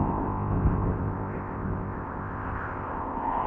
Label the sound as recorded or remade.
remade